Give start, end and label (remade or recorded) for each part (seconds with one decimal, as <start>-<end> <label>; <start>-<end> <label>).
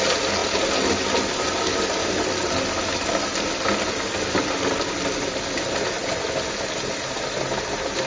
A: 0.0-8.1 recorded